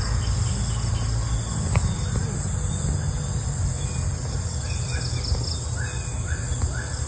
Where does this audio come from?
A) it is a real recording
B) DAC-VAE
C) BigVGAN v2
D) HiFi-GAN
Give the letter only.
A